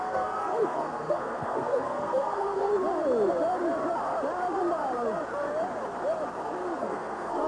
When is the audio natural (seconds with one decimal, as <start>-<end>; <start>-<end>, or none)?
2.7-6.8